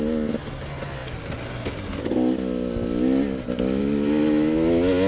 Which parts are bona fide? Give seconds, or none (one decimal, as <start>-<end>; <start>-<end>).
0.0-5.1